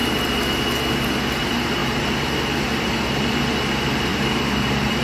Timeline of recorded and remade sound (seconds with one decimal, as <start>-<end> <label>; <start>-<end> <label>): 0.0-1.4 recorded; 1.4-5.0 remade